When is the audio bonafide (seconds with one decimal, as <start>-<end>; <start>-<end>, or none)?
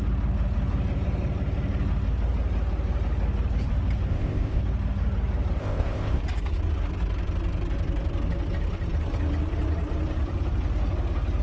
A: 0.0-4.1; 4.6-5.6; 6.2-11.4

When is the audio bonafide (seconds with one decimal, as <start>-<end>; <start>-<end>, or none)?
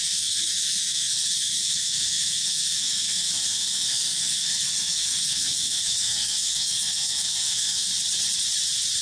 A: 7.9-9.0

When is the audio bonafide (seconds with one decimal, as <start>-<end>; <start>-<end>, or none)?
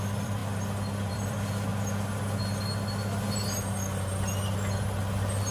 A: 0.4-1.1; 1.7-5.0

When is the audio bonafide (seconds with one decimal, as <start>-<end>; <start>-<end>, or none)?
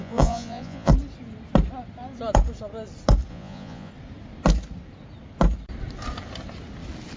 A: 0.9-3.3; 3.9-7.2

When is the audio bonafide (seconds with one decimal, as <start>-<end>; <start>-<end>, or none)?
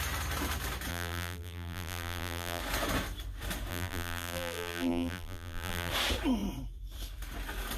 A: 0.0-0.9; 2.6-3.7; 5.9-7.8